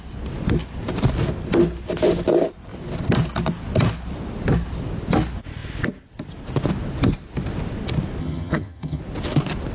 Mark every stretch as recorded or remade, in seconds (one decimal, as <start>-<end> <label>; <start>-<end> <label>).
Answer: 0.0-8.2 recorded; 8.2-9.0 remade; 9.0-9.7 recorded

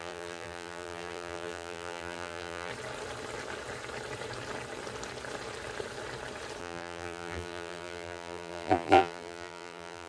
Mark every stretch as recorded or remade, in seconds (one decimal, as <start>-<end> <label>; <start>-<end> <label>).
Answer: 0.0-2.7 remade; 2.7-6.6 recorded; 6.6-10.1 remade